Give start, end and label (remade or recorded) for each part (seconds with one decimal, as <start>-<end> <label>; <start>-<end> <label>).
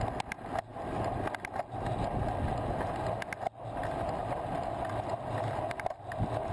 0.0-6.5 recorded